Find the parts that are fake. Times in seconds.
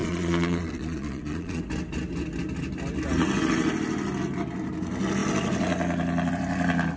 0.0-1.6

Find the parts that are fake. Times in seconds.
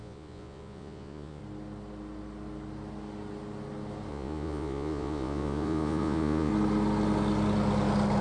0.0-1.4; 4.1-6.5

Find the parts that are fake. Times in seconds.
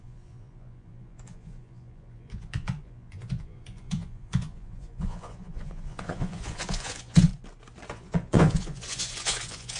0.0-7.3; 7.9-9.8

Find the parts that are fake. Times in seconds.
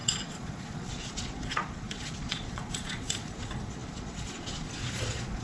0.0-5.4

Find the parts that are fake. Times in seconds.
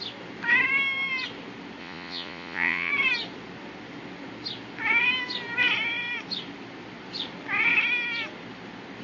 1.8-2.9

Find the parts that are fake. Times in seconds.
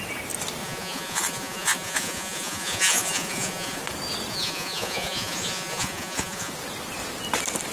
0.6-3.8; 4.3-6.5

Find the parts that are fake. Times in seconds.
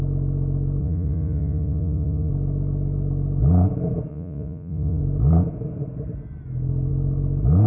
0.8-2.3; 4.1-5.0